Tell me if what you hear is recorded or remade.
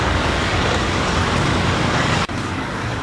remade